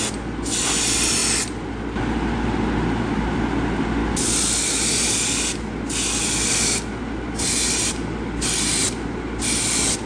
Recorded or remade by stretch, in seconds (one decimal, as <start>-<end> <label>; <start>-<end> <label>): 0.0-10.1 recorded